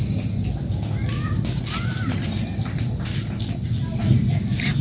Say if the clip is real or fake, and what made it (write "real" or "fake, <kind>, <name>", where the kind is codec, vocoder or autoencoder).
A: real